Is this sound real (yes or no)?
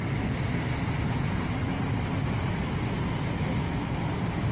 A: yes